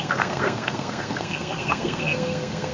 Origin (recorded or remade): remade